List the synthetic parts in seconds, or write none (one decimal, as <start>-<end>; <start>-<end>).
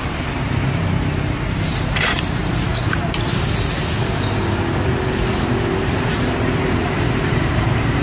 0.0-2.7; 5.9-8.0